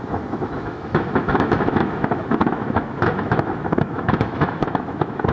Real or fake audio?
fake